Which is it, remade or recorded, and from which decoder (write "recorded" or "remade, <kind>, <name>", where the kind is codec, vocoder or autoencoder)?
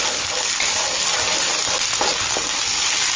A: recorded